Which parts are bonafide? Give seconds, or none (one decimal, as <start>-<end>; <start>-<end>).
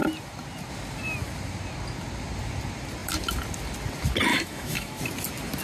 0.0-4.3; 5.0-5.6